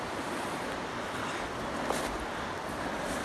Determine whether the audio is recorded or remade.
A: recorded